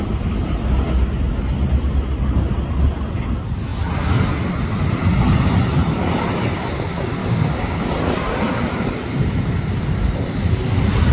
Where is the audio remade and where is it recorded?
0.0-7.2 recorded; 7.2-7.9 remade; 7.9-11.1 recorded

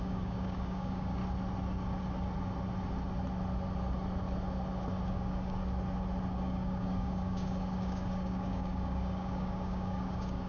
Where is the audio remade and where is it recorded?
0.0-1.2 remade; 1.2-5.1 recorded; 5.1-5.6 remade; 5.6-6.3 recorded; 6.3-10.5 remade

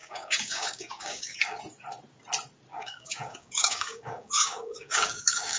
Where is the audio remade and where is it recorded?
0.0-1.6 remade; 1.6-2.7 recorded; 2.7-5.6 remade

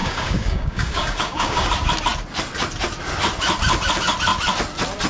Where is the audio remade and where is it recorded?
0.0-1.7 remade; 1.7-5.1 recorded

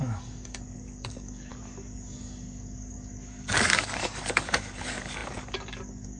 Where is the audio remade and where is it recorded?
0.0-6.2 remade